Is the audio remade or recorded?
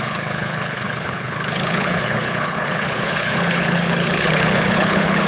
remade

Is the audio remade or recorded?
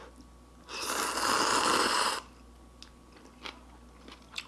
recorded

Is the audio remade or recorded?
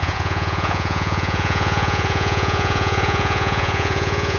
remade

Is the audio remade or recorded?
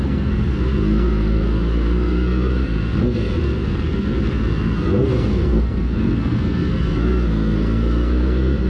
remade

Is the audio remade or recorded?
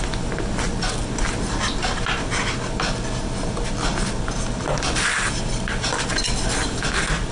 recorded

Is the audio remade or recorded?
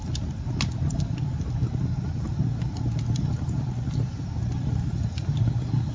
recorded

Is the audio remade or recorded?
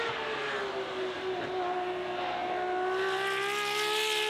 recorded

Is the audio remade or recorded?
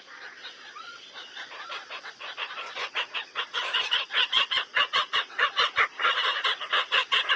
remade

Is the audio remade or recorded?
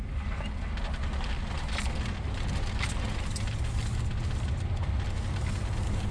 recorded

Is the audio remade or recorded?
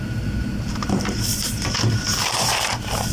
recorded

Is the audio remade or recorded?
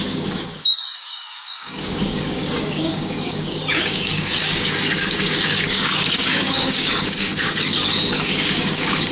remade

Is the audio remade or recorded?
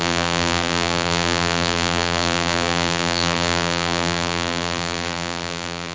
remade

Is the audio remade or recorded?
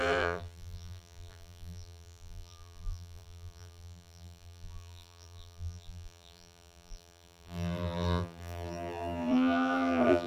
remade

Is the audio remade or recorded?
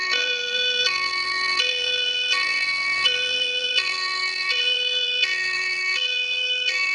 remade